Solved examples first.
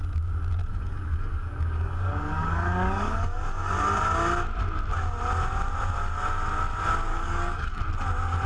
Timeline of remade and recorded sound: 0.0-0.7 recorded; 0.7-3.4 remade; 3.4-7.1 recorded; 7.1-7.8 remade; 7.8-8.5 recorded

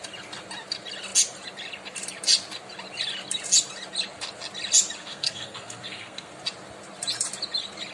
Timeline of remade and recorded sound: 0.0-5.0 recorded; 5.0-6.3 remade; 6.3-7.9 recorded